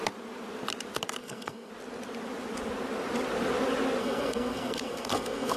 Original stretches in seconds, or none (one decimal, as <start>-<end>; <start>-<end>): 0.0-1.2; 1.7-4.0